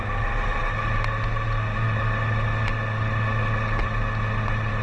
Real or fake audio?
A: real